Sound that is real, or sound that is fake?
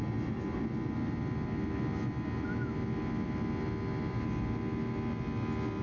real